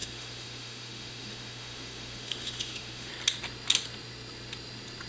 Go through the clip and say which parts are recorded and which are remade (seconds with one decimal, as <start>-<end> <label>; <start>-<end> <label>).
0.0-3.1 remade; 3.1-5.1 recorded